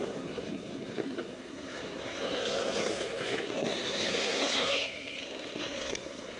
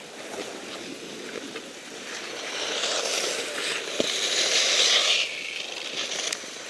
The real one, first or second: second